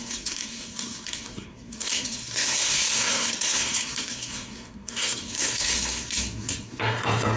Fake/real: fake